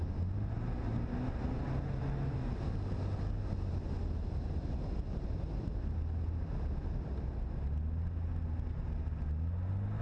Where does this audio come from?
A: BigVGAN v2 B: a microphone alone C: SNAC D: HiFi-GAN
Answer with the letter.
B